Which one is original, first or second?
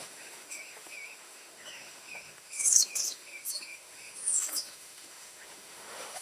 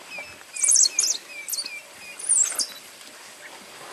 second